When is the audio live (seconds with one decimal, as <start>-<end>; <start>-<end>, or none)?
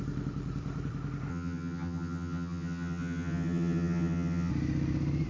0.0-1.3; 4.5-5.3